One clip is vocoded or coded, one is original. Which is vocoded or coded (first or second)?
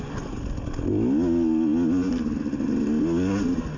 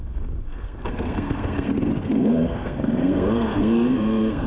second